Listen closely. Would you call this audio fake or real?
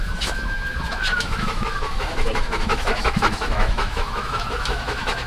fake